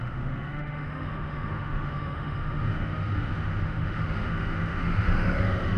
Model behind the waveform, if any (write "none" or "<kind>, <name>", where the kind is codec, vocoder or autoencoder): autoencoder, DAC-VAE